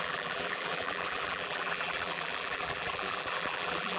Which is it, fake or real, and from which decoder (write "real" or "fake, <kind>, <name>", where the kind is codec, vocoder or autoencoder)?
fake, vocoder, BigVGAN v2